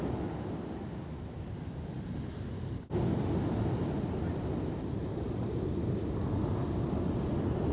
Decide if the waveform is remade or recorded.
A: recorded